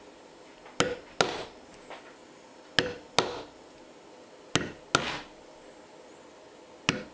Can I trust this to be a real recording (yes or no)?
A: yes